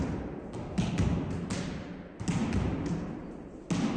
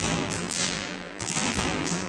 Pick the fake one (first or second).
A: second